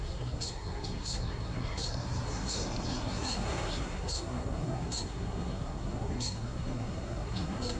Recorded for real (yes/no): no